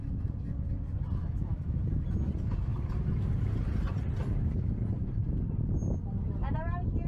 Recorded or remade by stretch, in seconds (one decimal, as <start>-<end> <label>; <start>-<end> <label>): 0.0-1.2 recorded; 1.2-1.8 remade; 1.8-7.1 recorded